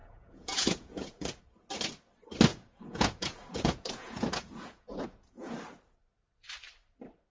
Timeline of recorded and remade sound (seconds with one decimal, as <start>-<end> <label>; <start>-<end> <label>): 0.0-1.4 remade; 1.4-2.5 recorded; 2.5-5.5 remade; 5.5-7.3 recorded